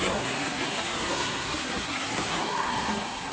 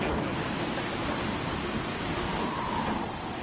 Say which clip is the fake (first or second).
first